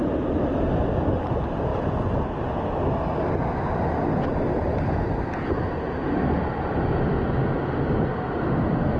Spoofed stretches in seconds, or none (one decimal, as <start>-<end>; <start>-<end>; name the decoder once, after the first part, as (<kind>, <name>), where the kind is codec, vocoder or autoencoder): none